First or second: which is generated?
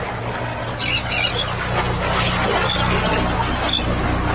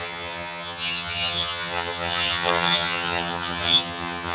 second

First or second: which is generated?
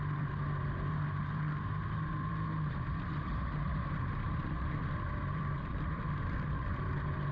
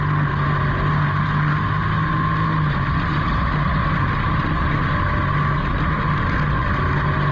first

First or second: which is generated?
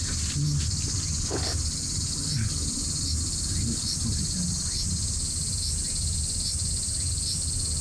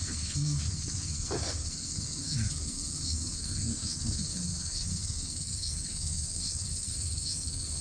second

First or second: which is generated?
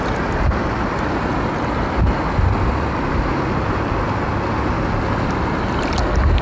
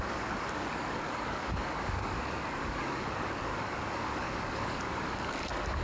second